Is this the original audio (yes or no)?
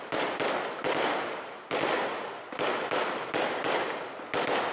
yes